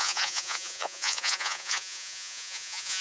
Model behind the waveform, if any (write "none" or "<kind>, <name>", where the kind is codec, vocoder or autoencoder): vocoder, Vocos